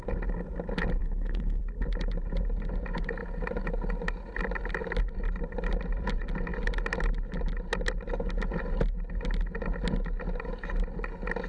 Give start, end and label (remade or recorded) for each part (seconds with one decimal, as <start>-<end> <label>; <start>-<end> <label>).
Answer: 0.0-1.0 recorded; 1.0-1.6 remade; 1.6-11.5 recorded